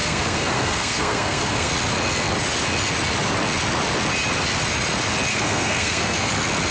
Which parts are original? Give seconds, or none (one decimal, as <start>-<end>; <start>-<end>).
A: 1.7-5.3; 6.3-6.7